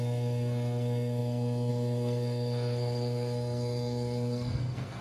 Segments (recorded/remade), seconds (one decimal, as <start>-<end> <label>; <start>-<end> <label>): 0.0-5.0 remade